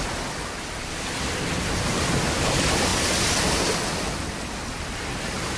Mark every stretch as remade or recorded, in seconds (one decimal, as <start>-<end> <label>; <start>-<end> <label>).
0.0-5.6 recorded